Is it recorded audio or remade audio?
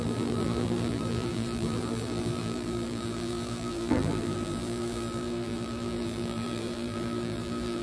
remade